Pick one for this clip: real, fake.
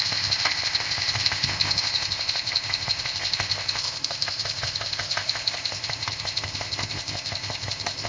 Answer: fake